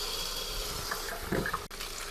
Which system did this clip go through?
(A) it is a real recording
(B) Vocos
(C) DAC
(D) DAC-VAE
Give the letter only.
A